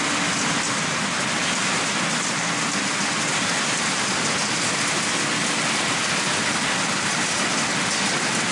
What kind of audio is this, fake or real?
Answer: real